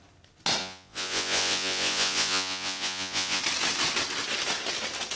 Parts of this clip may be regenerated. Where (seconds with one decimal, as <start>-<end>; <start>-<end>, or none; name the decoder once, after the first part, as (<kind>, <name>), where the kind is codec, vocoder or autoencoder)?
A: 0.6-3.4 (vocoder, Vocos)

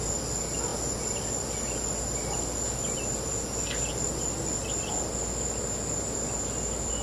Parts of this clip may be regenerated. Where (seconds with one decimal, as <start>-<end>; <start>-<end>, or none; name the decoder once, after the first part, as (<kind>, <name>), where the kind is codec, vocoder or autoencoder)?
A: none

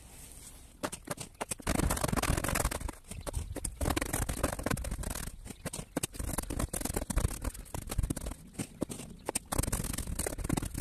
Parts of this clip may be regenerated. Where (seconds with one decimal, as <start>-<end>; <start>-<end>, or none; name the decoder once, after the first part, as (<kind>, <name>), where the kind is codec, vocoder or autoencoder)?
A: 3.6-4.2 (vocoder, BigVGAN v2)

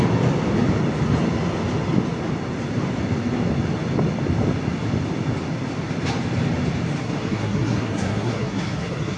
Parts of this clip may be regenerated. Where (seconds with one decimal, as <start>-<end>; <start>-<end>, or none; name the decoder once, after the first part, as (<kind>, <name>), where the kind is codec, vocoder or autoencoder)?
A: 7.0-9.2 (codec, SNAC)